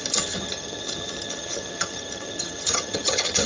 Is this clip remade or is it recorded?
remade